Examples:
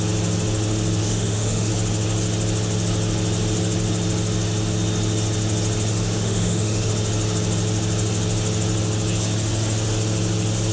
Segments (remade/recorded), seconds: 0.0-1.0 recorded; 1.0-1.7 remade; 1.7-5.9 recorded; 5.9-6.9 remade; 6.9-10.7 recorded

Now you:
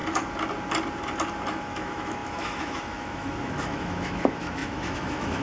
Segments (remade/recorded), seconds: 0.0-1.5 recorded; 1.5-5.4 remade

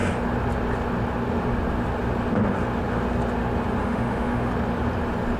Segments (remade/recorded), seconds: 0.0-3.8 recorded; 3.8-4.5 remade; 4.5-5.4 recorded

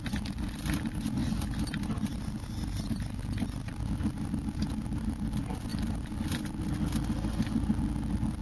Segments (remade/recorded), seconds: 0.0-8.4 recorded